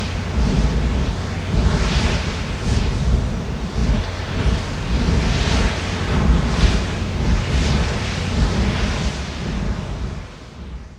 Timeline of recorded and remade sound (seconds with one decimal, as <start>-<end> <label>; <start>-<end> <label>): 0.0-11.0 recorded